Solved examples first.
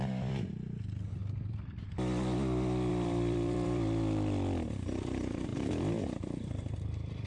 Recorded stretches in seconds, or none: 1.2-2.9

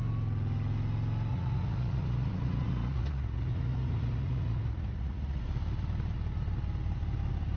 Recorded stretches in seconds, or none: 0.0-1.3; 5.4-7.6

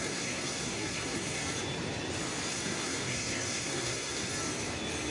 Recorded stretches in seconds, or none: 1.4-2.5; 4.3-5.1

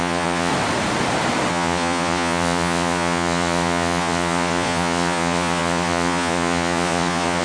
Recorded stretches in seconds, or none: 0.5-1.5

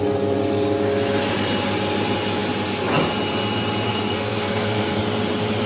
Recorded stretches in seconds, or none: 0.0-3.9; 5.0-5.7

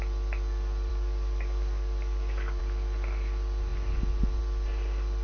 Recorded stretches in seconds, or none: 0.0-0.9; 2.6-5.2

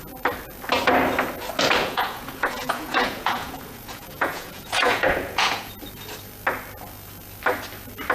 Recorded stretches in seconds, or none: 0.0-1.8; 5.7-8.1

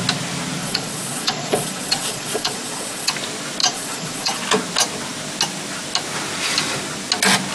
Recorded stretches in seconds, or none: 0.0-0.6; 3.1-3.6; 4.4-7.5